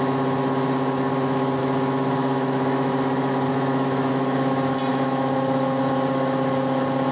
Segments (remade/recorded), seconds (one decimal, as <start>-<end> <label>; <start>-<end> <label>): 0.0-1.6 recorded; 1.6-2.9 remade; 2.9-3.5 recorded; 3.5-4.1 remade; 4.1-4.9 recorded; 4.9-5.8 remade; 5.8-7.1 recorded